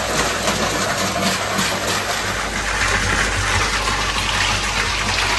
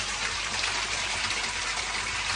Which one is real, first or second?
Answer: first